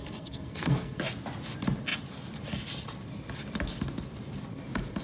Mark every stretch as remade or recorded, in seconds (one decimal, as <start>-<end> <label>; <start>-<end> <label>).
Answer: 0.0-1.0 remade; 1.0-5.0 recorded